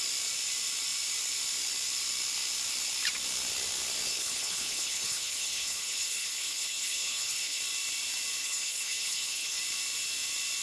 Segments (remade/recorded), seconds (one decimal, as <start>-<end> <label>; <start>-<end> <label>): 0.0-4.1 recorded; 4.1-7.6 remade; 7.6-8.4 recorded; 8.4-9.6 remade; 9.6-10.6 recorded